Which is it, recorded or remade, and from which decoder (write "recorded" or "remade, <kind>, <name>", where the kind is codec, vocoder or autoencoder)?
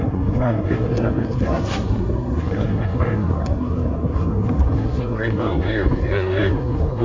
remade, codec, SNAC